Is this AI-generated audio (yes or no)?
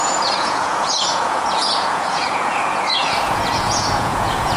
yes